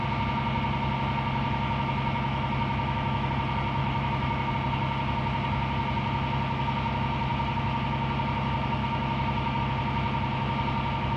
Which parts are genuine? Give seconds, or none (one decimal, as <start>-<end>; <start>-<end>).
0.0-2.3; 3.3-3.8; 4.5-8.8; 9.6-11.2